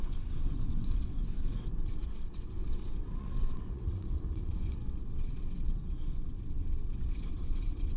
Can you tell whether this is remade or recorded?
remade